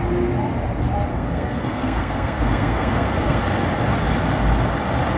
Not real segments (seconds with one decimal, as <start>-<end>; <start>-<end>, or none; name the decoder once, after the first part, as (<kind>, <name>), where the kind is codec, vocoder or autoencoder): 1.1-3.4 (codec, SNAC)